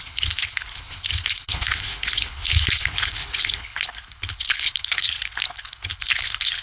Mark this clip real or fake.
fake